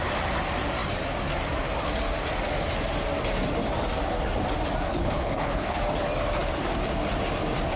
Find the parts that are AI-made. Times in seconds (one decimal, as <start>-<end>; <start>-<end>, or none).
4.9-5.8